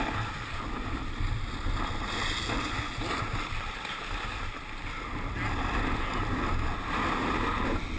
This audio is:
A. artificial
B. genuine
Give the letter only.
B